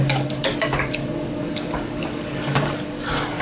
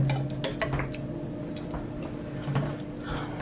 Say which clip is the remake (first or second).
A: first